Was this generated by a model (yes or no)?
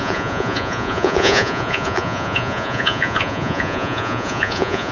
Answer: yes